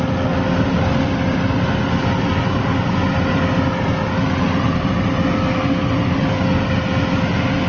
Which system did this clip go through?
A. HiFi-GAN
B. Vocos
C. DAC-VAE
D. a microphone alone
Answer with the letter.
D